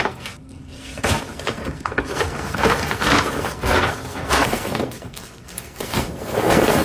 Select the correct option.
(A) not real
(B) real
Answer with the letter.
A